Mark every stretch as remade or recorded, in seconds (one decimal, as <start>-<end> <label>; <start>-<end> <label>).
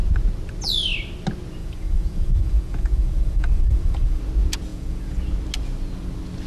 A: 0.0-1.6 recorded; 1.6-4.2 remade; 4.2-4.7 recorded; 4.7-5.2 remade; 5.2-6.5 recorded